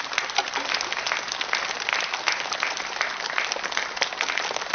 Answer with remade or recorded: recorded